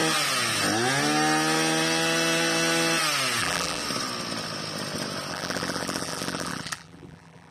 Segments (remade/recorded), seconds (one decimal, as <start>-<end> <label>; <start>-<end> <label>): 0.0-3.4 recorded; 3.4-3.8 remade; 3.8-5.3 recorded; 5.3-7.5 remade